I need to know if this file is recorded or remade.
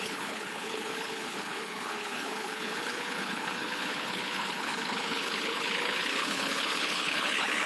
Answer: remade